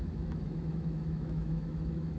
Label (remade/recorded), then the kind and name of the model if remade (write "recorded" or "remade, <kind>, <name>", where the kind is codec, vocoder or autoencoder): remade, autoencoder, DAC-VAE